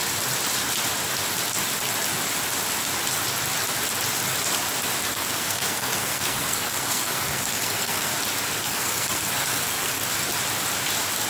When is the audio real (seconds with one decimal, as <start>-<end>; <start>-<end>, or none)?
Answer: 0.0-5.1; 8.1-8.6; 10.0-11.3